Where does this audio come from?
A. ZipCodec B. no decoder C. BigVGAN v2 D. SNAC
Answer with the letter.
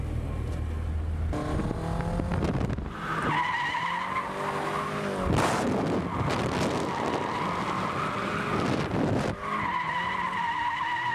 B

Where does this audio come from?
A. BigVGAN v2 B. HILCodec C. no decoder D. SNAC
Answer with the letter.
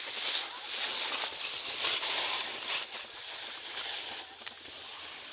C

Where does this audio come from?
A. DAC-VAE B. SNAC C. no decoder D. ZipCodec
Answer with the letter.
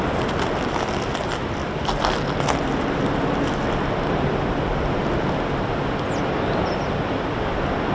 C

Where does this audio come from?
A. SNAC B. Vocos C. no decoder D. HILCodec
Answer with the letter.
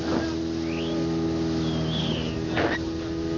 C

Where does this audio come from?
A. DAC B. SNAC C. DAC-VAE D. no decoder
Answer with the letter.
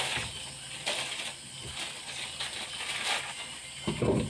D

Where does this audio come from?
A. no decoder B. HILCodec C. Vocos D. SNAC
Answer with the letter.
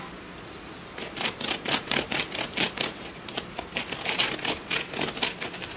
A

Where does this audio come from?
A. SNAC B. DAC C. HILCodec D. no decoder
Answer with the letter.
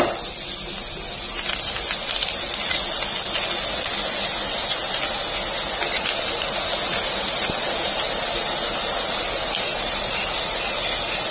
D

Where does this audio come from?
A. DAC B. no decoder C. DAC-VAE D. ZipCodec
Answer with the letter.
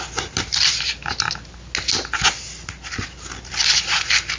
B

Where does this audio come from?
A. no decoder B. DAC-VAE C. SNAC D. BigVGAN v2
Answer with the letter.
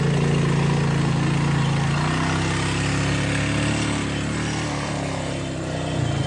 A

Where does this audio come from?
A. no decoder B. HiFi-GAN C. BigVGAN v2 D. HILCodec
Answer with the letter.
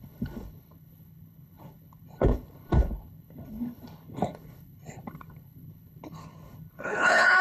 D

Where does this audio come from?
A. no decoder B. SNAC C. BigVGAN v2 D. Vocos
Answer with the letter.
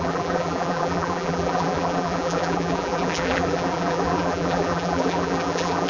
C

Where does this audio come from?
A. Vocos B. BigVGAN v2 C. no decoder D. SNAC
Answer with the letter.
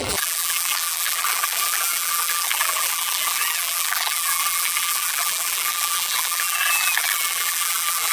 B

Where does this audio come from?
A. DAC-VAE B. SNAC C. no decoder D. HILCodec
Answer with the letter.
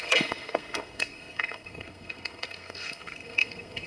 B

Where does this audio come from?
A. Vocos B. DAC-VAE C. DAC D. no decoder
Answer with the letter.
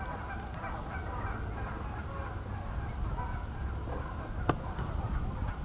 D